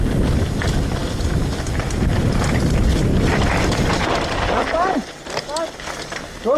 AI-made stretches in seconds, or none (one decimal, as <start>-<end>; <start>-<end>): none